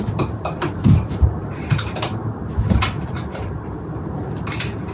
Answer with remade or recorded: remade